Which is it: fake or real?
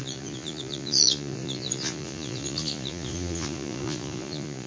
fake